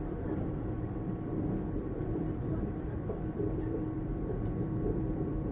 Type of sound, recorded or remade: remade